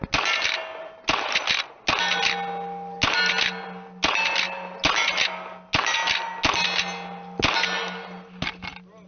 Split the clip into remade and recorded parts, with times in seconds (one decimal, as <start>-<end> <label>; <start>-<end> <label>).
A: 0.0-9.1 recorded